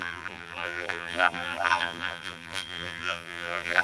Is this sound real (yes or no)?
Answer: no